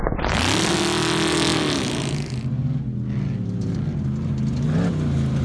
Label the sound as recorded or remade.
recorded